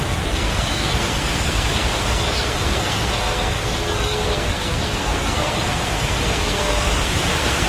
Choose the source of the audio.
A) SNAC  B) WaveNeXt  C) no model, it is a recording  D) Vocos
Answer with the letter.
A